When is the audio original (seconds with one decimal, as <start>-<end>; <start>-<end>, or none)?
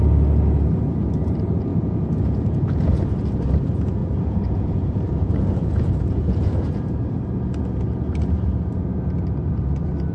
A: 0.0-1.7; 3.1-4.0; 6.8-10.1